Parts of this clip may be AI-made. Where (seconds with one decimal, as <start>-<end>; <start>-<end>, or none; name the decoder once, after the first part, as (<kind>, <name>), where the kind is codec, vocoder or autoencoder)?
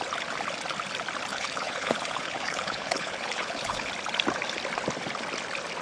1.3-3.9 (codec, HILCodec)